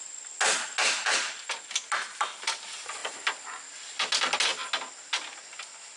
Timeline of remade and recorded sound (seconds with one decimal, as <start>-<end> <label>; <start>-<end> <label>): 0.0-6.0 recorded